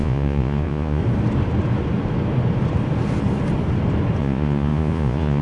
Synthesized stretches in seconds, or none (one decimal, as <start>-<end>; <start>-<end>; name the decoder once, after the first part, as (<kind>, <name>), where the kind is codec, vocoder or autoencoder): 0.0-1.0 (vocoder, Vocos); 4.2-5.4